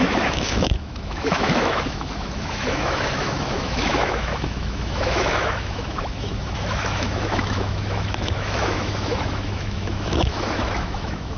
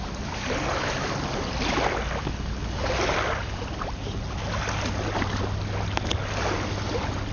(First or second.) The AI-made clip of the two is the first